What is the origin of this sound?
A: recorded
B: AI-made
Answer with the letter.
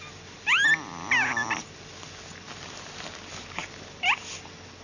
A